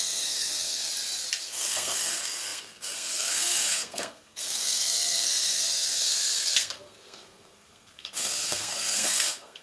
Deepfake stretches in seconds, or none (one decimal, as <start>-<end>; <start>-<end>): 0.0-0.9; 1.4-9.6